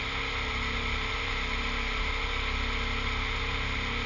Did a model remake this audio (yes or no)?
no